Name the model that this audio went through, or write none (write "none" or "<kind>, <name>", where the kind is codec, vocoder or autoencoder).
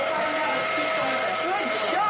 none